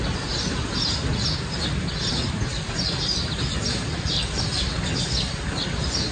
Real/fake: real